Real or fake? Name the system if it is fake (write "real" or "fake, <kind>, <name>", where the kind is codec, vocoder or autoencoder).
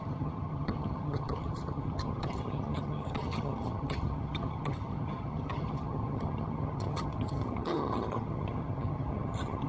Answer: fake, vocoder, HiFi-GAN